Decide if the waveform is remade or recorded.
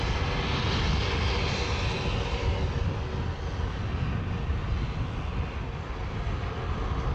recorded